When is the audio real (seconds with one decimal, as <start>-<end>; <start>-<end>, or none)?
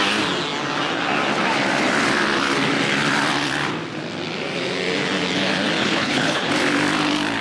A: 0.0-5.8; 6.5-7.4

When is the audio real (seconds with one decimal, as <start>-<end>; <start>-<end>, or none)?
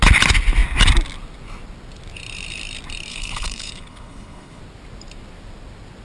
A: 0.0-3.1; 4.6-6.0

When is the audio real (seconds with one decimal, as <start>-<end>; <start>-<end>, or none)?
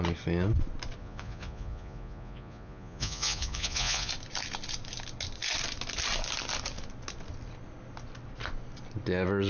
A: 0.0-1.0; 4.1-9.5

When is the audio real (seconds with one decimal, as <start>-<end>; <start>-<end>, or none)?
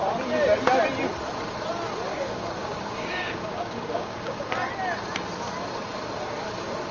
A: 0.0-2.1; 4.4-6.9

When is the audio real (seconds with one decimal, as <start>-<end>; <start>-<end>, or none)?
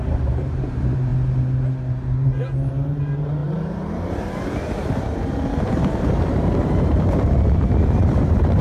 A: 1.1-2.7